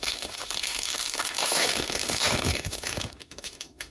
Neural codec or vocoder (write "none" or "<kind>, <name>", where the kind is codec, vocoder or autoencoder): autoencoder, DAC-VAE